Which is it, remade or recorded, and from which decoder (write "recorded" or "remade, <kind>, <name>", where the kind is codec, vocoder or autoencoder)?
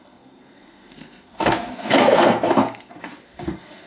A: remade, codec, SNAC